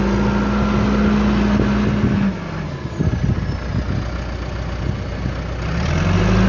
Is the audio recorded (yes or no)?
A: yes